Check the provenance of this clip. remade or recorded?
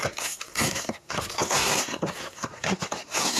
remade